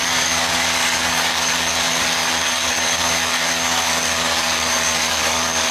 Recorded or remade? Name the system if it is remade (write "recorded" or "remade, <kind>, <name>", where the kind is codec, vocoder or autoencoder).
remade, codec, DAC